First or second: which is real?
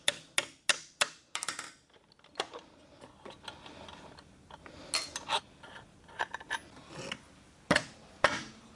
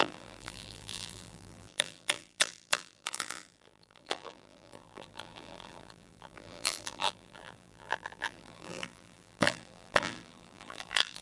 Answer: first